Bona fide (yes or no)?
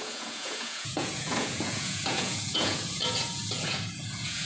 no